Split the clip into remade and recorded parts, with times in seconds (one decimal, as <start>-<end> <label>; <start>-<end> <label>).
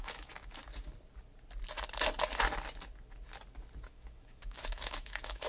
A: 0.0-0.6 remade; 0.6-3.9 recorded; 3.9-5.5 remade